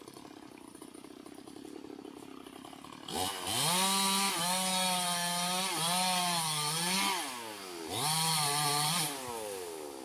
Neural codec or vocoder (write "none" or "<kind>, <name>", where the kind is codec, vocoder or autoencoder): none